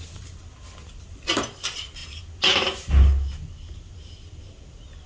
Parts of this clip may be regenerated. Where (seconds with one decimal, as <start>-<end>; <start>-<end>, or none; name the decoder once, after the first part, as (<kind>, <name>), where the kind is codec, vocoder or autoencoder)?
none

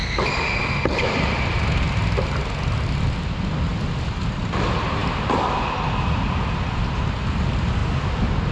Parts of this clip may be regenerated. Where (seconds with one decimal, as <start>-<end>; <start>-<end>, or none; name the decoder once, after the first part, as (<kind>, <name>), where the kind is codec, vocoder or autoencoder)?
none

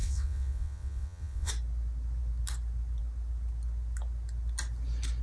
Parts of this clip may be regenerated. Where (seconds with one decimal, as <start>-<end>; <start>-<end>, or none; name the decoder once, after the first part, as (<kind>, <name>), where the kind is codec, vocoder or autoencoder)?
0.0-1.5 (vocoder, WaveNeXt)